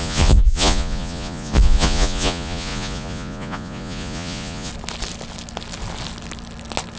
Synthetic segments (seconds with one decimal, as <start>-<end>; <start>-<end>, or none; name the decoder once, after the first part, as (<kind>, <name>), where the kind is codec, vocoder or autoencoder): 0.0-4.7 (vocoder, Vocos)